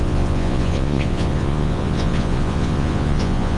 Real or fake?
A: fake